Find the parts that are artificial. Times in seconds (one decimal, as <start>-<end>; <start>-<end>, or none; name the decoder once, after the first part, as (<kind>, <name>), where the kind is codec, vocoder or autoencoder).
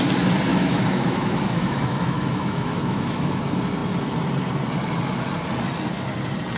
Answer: 0.5-3.4 (autoencoder, DAC-VAE)